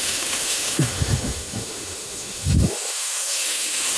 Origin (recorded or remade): remade